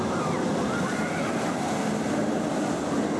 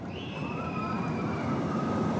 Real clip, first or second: first